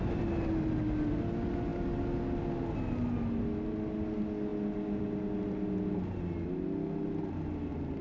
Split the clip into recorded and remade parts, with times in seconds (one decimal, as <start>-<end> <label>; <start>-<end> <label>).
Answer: 0.0-8.0 recorded